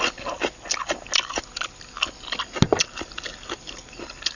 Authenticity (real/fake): real